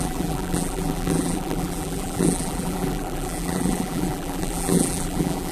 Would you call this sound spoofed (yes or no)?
yes